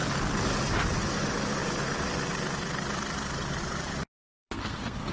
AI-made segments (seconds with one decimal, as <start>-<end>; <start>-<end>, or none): 4.4-5.1